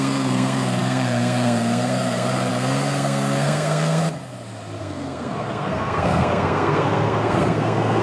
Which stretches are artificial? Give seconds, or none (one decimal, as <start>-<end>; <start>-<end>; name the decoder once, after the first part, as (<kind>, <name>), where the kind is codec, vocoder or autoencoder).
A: 0.0-4.0 (codec, SNAC); 4.8-8.0